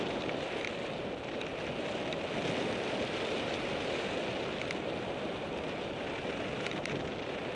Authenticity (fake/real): real